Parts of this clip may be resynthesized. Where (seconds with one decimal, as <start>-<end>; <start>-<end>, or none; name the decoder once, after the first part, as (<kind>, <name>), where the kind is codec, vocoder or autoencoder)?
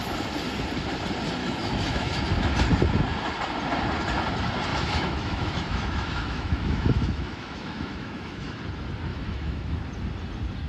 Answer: 1.4-2.2 (autoencoder, DAC-VAE); 4.7-8.6; 9.1-9.8